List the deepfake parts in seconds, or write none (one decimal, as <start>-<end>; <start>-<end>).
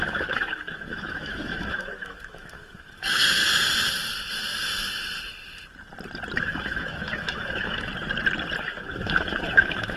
0.0-3.4; 6.4-7.9; 8.6-10.0